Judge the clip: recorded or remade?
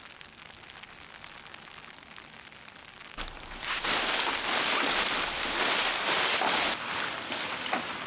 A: recorded